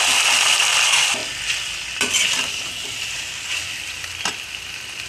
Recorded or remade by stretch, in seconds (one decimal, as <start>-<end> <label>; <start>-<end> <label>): 0.0-5.1 recorded